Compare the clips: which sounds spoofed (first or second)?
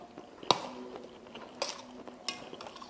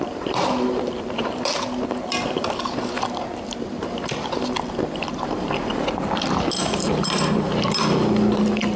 second